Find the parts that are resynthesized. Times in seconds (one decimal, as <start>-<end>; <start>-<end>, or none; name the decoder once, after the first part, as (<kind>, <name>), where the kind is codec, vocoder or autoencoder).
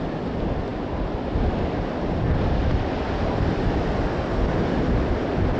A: none